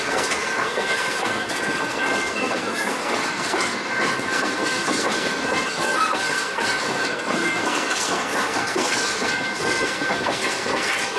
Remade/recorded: remade